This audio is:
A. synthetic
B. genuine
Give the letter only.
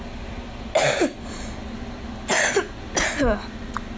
B